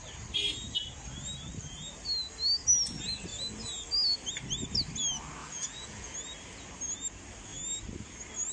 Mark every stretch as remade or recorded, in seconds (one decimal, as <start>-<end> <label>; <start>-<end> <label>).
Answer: 0.0-5.4 recorded; 5.4-6.1 remade; 6.1-8.5 recorded

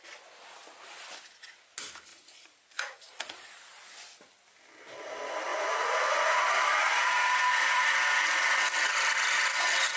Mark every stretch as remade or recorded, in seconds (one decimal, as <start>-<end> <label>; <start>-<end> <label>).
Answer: 0.0-2.1 recorded; 2.1-3.5 remade; 3.5-5.5 recorded; 5.5-7.9 remade; 7.9-10.0 recorded